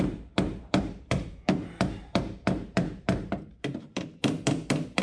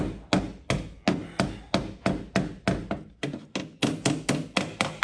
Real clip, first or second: second